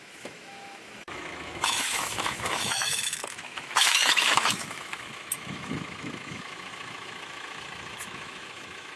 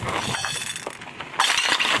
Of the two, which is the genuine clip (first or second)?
second